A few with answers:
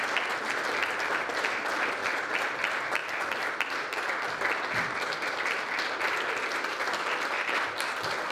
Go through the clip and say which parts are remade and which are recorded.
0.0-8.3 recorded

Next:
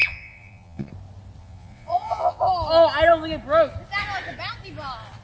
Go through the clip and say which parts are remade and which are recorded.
0.0-0.9 remade; 0.9-1.4 recorded; 1.4-2.4 remade; 2.4-5.2 recorded

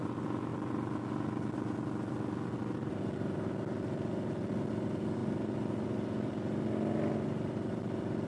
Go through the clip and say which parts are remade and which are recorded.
0.0-8.3 recorded

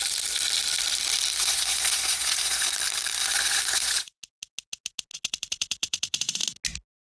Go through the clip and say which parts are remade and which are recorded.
0.0-1.4 recorded; 1.4-2.7 remade; 2.7-3.2 recorded; 3.2-4.2 remade; 4.2-5.1 recorded; 5.1-6.4 remade; 6.4-7.2 recorded

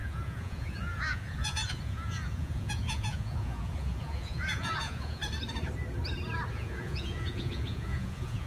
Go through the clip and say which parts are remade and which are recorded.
0.0-5.2 remade; 5.2-6.5 recorded; 6.5-8.5 remade

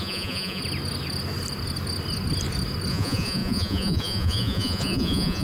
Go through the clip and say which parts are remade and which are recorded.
0.0-0.6 remade; 0.6-2.9 recorded; 2.9-5.4 remade